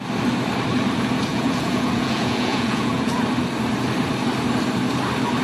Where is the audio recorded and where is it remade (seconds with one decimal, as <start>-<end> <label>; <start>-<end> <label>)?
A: 0.0-1.3 recorded; 1.3-3.2 remade; 3.2-5.4 recorded